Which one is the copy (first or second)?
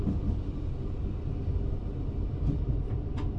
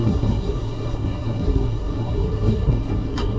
second